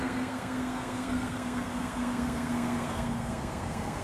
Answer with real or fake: fake